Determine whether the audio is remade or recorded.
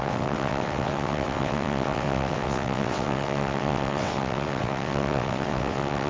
remade